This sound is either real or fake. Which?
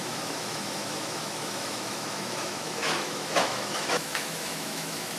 fake